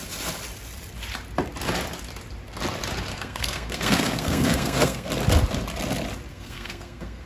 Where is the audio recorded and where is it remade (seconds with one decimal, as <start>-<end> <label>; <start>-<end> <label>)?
0.0-3.1 recorded; 3.1-5.1 remade; 5.1-6.3 recorded; 6.3-7.3 remade